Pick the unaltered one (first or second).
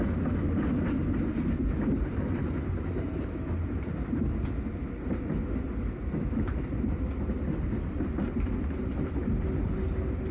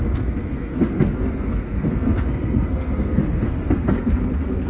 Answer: first